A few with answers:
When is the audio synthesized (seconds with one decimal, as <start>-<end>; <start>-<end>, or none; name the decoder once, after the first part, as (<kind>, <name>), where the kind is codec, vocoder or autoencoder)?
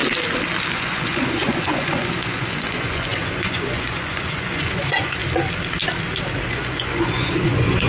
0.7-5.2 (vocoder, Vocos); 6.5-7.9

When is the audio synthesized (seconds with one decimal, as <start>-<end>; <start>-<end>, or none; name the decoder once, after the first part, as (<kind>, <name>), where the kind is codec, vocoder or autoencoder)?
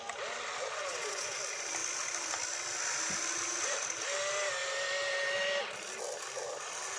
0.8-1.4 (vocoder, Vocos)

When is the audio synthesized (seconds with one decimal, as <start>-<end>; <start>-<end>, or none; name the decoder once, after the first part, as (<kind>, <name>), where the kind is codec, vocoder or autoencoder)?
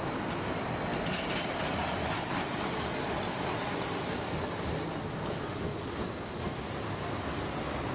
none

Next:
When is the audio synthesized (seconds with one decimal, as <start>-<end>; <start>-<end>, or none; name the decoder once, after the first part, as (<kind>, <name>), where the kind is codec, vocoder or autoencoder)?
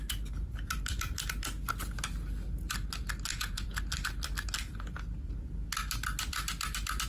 3.3-3.8 (vocoder, Vocos)